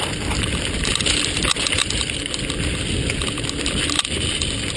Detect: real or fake real